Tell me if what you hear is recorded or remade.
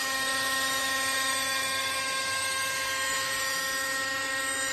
remade